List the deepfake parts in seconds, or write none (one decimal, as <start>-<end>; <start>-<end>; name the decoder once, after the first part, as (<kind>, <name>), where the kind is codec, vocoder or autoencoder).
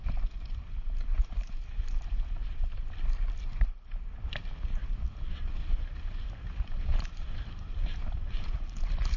0.0-2.4 (vocoder, BigVGAN v2); 5.3-9.2